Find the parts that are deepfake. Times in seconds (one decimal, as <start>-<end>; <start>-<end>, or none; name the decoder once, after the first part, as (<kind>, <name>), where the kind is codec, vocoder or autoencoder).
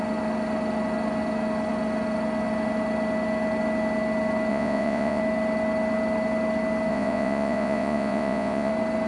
4.5-5.2 (vocoder, Vocos); 6.9-8.7